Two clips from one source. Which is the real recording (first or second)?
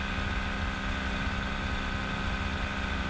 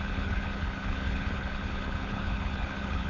first